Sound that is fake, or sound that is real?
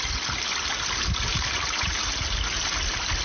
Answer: real